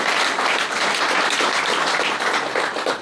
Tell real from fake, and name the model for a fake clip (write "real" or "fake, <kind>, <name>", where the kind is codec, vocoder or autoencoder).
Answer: fake, vocoder, BigVGAN v2